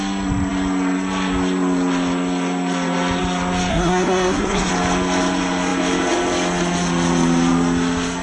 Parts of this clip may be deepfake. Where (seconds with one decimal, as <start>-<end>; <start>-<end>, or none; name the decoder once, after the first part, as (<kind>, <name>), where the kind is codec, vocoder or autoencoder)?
3.7-4.7 (codec, SNAC)

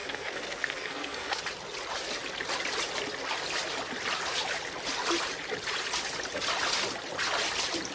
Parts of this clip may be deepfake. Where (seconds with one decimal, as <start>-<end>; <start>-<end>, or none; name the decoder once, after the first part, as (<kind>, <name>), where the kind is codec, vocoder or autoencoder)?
0.0-1.4 (codec, SNAC)

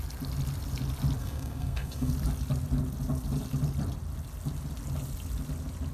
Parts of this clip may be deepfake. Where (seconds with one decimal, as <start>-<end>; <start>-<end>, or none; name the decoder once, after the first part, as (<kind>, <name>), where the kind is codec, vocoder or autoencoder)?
1.2-2.1 (codec, SNAC)

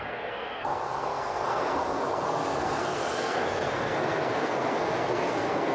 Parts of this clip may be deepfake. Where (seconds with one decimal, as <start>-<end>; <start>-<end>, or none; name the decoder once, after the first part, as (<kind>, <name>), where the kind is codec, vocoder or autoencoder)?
0.0-5.7 (codec, SNAC)

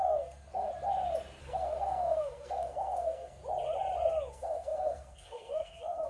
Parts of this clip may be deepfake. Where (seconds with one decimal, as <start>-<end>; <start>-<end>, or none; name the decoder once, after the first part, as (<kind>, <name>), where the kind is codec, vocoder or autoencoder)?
0.0-0.7 (codec, SNAC); 1.4-3.4; 4.3-6.1

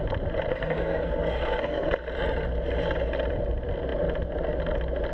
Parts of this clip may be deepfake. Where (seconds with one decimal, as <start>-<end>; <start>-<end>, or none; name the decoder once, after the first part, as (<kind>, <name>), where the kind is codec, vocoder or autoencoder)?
0.5-1.9 (codec, SNAC)

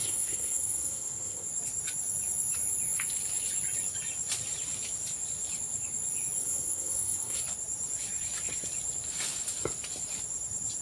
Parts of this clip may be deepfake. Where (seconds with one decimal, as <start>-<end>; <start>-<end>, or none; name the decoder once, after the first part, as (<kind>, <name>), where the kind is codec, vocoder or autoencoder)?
0.0-1.5 (codec, SNAC); 6.4-7.4